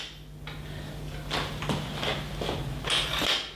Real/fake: real